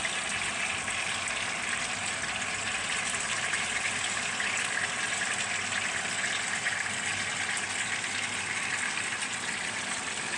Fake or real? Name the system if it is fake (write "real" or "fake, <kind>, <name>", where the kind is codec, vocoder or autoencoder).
real